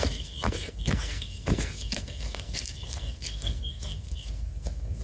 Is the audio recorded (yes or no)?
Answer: no